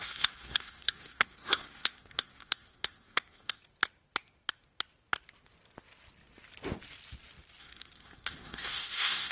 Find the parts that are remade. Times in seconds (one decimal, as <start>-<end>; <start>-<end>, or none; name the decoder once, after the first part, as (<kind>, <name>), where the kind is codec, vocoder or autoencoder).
0.0-3.6 (codec, SNAC); 7.6-9.3